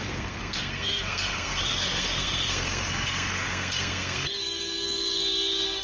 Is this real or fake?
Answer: fake